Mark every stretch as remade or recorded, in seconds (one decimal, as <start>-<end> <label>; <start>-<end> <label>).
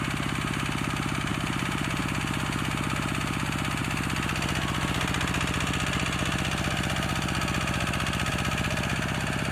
0.0-1.3 recorded; 1.3-2.0 remade; 2.0-9.5 recorded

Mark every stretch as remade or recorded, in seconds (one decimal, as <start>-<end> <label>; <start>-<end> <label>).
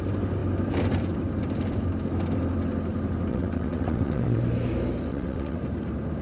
0.0-3.3 recorded; 3.3-4.4 remade; 4.4-5.1 recorded; 5.1-5.6 remade; 5.6-6.2 recorded